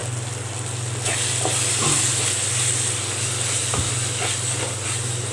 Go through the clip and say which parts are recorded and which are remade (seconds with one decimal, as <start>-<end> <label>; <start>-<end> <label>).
0.0-5.3 recorded